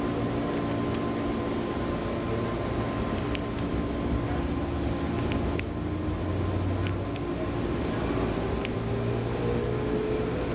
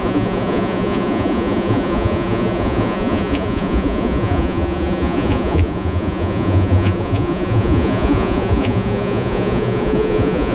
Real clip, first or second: first